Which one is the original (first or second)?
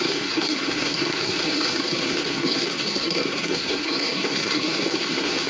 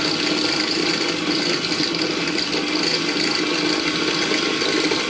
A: second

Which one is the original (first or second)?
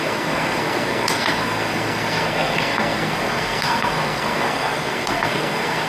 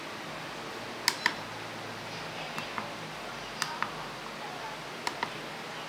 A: second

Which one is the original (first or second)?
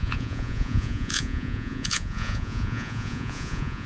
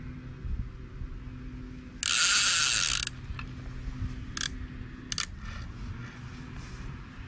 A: second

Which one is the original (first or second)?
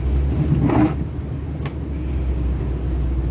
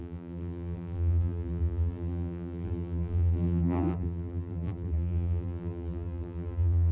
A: first